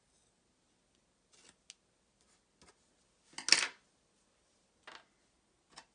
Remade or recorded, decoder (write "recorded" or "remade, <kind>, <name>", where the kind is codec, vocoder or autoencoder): recorded